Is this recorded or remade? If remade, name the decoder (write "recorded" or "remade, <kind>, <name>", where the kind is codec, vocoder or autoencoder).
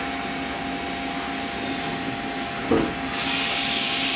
recorded